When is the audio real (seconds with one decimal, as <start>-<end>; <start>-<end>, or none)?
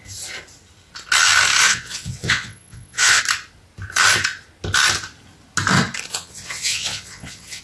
0.0-1.6; 3.2-6.1